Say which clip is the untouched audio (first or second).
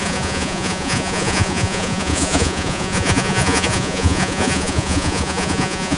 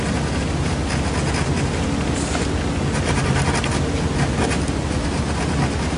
second